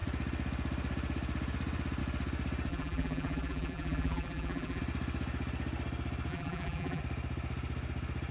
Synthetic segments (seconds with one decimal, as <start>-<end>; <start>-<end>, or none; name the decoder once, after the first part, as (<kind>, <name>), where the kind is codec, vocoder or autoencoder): 2.7-4.8 (vocoder, BigVGAN v2); 6.3-7.0